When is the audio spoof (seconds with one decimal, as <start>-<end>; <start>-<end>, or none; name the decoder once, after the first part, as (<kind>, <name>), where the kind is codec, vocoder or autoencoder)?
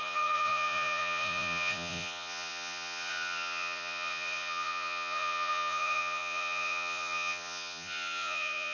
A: 0.0-8.7 (vocoder, Vocos)